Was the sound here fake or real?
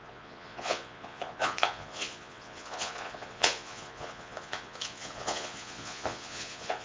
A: fake